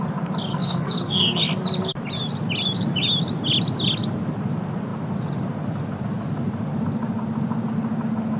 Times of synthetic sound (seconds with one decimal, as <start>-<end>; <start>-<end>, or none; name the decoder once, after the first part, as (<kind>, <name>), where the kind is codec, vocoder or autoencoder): 0.5-1.4 (codec, SNAC)